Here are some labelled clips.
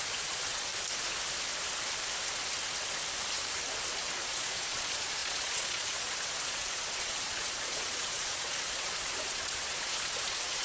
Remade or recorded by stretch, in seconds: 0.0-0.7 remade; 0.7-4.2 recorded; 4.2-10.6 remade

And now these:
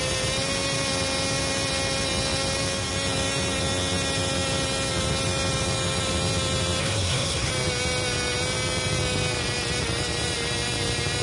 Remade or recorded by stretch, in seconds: 0.0-6.8 recorded; 6.8-7.5 remade; 7.5-11.2 recorded